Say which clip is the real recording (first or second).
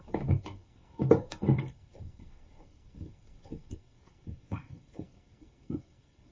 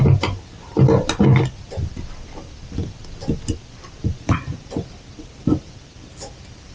second